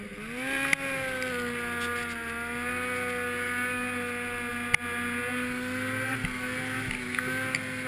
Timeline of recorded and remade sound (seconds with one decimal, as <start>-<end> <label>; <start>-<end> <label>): 0.0-7.9 recorded